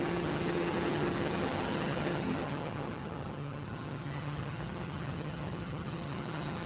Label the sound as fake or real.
fake